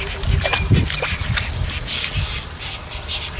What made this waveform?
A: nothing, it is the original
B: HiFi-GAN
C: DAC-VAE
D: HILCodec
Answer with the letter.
A